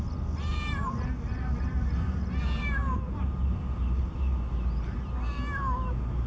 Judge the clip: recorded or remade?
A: recorded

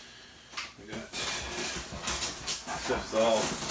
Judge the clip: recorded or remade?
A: recorded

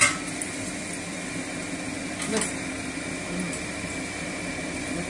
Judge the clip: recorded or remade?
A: recorded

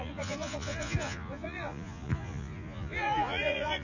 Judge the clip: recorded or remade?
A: remade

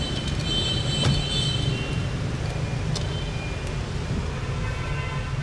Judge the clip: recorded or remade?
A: recorded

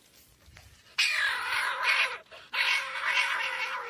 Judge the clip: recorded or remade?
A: recorded